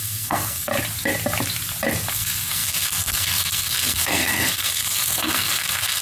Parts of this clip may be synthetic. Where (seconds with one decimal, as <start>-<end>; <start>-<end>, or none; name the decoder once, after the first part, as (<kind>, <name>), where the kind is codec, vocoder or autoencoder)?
0.0-0.7 (codec, SNAC); 2.1-6.0